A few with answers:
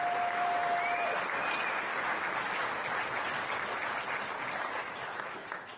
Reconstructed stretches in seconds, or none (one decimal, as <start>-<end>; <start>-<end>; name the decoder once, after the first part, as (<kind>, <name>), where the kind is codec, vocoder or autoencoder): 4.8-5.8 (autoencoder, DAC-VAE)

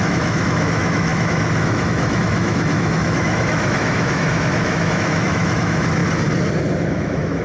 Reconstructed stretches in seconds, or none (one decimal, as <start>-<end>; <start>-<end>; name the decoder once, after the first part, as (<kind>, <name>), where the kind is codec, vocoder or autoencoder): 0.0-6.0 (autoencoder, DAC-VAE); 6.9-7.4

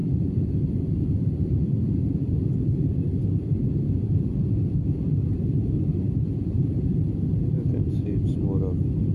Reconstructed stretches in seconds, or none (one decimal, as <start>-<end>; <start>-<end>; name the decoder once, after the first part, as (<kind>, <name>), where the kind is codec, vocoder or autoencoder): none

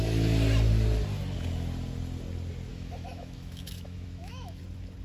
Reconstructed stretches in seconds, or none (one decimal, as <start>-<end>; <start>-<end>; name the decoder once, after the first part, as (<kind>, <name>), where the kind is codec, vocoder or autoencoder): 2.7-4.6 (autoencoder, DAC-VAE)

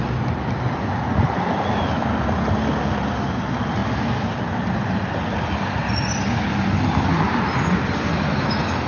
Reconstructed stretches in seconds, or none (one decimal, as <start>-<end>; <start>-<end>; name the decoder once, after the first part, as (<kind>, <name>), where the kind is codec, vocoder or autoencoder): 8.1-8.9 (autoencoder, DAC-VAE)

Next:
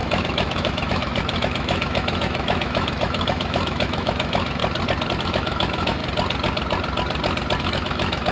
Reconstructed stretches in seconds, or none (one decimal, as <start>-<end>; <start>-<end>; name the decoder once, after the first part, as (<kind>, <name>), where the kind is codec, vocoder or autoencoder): 0.0-4.6 (autoencoder, DAC-VAE); 5.2-6.0; 7.6-8.3

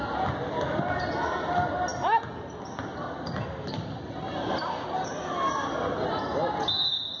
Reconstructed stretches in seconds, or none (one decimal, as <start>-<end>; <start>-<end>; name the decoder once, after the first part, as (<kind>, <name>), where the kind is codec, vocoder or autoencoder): none